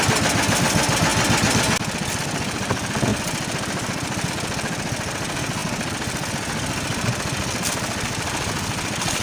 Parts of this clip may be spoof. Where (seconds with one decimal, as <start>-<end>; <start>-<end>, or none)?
3.1-4.3; 5.6-6.3